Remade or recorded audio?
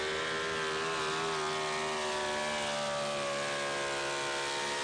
recorded